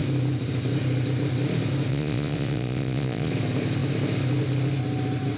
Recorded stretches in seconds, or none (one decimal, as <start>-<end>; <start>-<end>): 0.0-1.9; 3.3-5.4